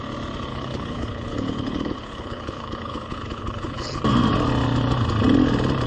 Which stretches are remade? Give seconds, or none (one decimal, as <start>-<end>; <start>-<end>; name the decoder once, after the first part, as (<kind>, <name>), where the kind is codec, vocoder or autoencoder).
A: 0.5-4.0 (codec, HILCodec)